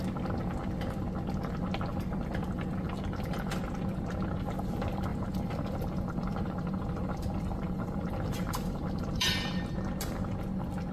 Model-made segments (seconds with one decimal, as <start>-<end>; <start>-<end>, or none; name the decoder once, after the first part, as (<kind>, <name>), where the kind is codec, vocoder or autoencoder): 1.9-3.6 (vocoder, BigVGAN v2); 5.1-9.6